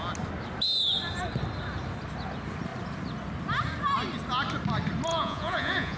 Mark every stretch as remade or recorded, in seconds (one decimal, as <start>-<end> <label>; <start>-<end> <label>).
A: 0.0-5.1 recorded; 5.1-6.0 remade